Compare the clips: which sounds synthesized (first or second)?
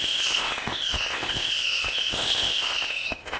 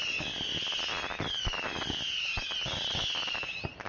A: first